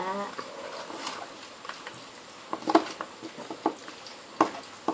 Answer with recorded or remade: recorded